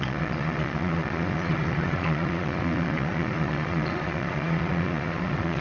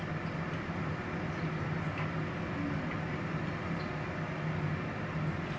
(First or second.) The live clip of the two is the second